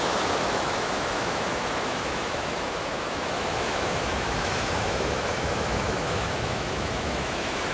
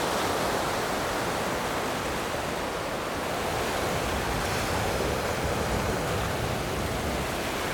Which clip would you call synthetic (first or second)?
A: first